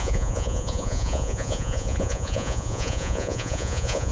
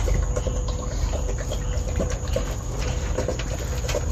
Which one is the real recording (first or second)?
second